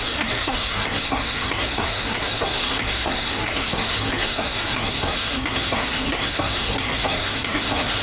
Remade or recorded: remade